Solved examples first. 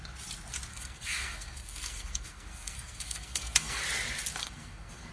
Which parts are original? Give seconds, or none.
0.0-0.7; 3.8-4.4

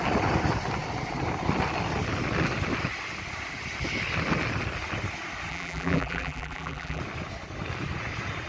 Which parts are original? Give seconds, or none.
0.0-5.5; 7.0-8.5